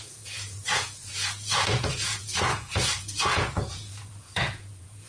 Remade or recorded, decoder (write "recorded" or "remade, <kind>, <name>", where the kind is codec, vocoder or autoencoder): remade, vocoder, Vocos